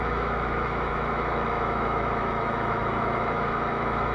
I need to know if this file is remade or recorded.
remade